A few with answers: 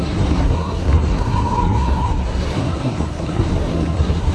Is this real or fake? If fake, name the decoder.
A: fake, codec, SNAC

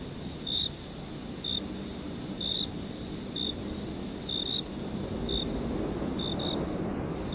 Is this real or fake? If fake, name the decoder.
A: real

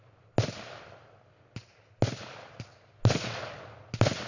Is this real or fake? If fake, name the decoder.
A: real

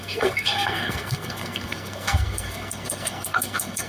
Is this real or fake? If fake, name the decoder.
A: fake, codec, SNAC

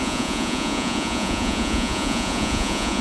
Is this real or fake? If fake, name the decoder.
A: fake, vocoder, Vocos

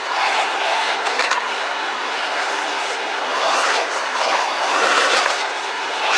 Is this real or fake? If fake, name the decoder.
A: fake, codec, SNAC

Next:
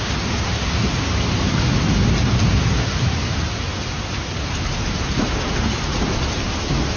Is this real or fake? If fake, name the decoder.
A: real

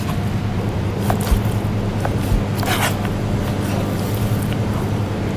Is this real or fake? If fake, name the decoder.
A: real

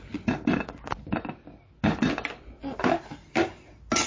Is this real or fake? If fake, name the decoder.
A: real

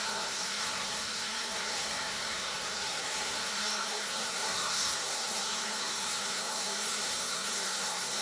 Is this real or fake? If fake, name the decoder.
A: fake, codec, SNAC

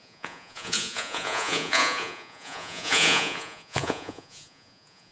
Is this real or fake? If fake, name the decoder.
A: fake, vocoder, Vocos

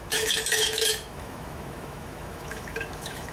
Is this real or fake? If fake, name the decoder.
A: fake, autoencoder, DAC-VAE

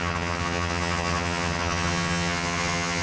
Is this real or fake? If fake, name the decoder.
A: fake, vocoder, HiFi-GAN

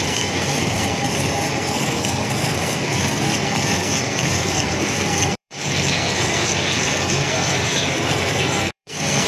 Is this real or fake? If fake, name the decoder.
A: fake, codec, SNAC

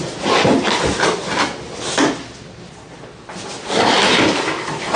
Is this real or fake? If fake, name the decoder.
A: real